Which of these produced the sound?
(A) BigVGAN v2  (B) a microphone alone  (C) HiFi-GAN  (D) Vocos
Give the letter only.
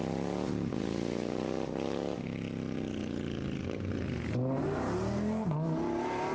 B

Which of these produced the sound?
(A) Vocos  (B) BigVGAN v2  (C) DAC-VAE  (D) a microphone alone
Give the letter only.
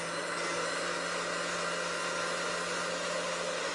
D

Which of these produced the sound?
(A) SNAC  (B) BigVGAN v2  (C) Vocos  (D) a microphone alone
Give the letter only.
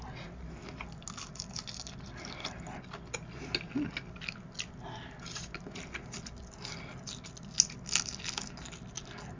D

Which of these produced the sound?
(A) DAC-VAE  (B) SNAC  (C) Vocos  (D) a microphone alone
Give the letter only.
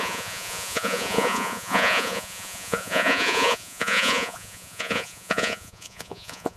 C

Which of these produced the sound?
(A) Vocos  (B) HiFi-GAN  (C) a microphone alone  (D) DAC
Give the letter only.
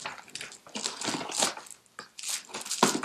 C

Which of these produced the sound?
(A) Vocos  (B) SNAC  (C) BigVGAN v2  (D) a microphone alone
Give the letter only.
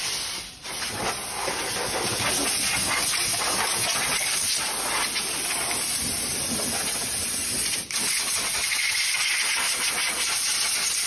D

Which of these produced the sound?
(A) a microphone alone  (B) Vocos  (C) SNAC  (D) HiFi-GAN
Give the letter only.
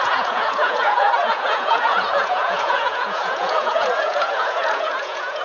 B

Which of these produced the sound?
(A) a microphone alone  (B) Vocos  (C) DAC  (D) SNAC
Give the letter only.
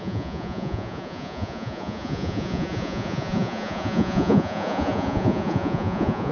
B